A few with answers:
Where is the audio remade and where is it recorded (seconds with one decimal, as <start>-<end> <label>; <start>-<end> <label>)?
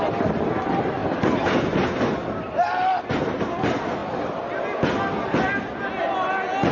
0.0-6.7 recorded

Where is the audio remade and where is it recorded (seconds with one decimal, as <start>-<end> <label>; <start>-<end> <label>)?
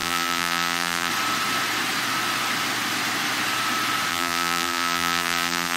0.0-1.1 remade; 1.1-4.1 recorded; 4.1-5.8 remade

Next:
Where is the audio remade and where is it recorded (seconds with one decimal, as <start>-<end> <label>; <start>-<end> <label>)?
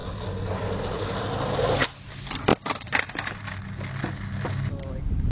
0.0-2.5 recorded; 2.5-3.4 remade; 3.4-5.3 recorded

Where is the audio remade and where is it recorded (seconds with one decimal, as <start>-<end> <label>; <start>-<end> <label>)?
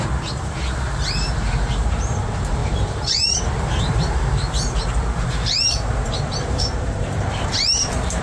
0.0-8.2 remade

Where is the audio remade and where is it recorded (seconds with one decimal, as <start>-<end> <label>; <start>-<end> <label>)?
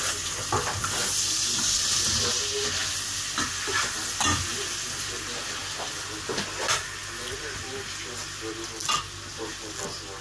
0.0-10.2 recorded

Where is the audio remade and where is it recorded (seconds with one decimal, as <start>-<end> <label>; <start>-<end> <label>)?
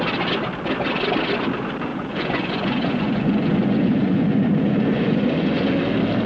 0.0-1.9 recorded; 1.9-5.7 remade; 5.7-6.3 recorded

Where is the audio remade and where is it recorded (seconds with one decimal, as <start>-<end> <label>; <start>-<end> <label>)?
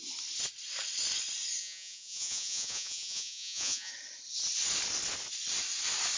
0.0-1.6 recorded; 1.6-3.9 remade; 3.9-6.2 recorded